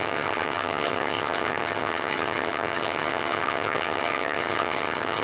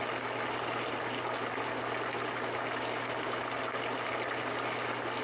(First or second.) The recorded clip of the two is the second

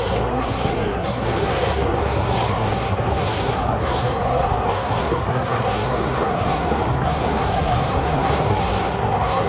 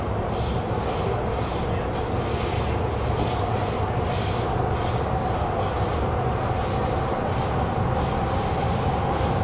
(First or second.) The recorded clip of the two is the second